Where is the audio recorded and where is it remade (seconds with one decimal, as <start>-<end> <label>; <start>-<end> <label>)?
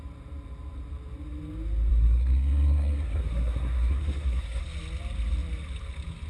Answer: 0.0-1.9 recorded; 1.9-4.6 remade; 4.6-6.3 recorded